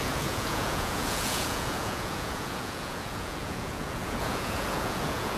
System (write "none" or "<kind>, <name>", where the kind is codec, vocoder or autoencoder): vocoder, Vocos